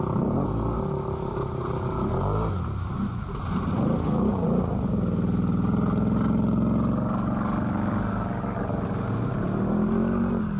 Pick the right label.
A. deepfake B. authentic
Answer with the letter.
B